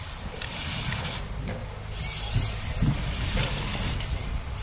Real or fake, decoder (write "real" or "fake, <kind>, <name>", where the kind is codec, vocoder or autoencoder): real